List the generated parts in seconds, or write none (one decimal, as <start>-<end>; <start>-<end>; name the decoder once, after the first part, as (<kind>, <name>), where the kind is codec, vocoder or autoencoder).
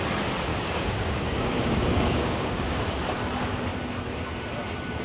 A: 0.5-2.8 (codec, DAC)